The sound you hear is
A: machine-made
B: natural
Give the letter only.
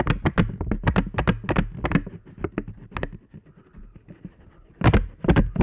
B